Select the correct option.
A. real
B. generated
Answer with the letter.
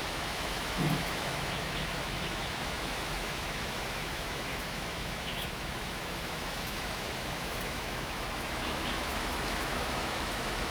B